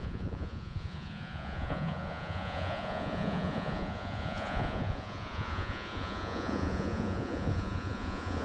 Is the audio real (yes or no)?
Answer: no